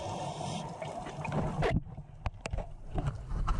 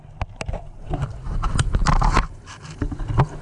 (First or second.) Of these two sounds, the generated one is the first